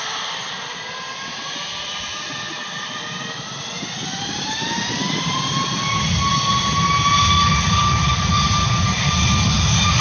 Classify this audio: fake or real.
real